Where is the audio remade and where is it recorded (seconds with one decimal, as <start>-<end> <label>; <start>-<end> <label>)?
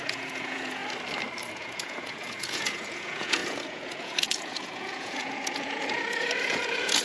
0.0-0.8 remade; 0.8-1.5 recorded; 1.5-7.0 remade